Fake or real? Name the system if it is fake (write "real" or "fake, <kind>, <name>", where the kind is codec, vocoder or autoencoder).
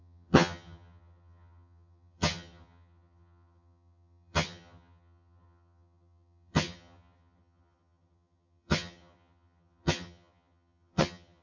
fake, vocoder, HiFi-GAN